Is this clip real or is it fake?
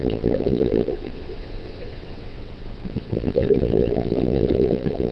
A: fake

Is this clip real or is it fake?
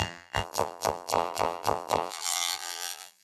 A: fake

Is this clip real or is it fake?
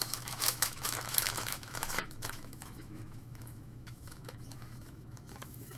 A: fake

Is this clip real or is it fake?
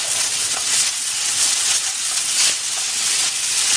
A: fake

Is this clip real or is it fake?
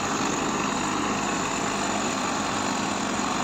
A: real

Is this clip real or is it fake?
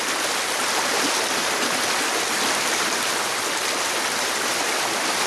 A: real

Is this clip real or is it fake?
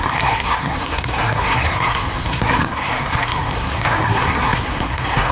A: fake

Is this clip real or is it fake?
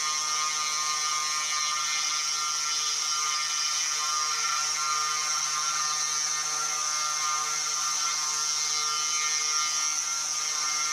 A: real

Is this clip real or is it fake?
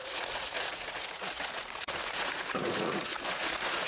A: fake